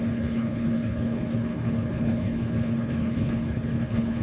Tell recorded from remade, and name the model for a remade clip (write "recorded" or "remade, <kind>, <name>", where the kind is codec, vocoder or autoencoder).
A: remade, codec, HILCodec